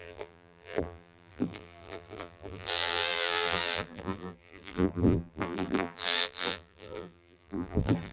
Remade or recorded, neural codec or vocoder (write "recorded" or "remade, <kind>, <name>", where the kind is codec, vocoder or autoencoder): remade, vocoder, BigVGAN v2